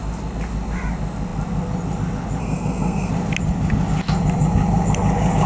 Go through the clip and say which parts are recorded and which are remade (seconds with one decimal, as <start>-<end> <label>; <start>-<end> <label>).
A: 0.0-2.4 recorded; 2.4-3.1 remade; 3.1-5.5 recorded